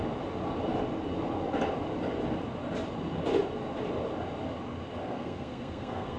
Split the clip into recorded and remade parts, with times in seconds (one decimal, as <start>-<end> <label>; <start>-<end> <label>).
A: 0.0-5.0 recorded; 5.0-6.2 remade